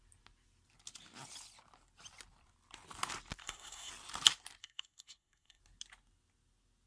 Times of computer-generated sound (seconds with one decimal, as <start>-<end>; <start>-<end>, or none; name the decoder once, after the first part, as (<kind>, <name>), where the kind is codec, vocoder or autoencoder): 3.4-3.9 (codec, SNAC); 4.6-5.6